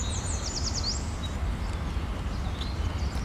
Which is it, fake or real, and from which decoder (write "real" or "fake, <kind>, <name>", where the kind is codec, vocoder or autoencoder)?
real